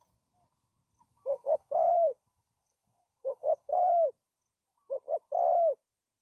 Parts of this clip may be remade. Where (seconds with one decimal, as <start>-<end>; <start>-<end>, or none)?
1.3-3.9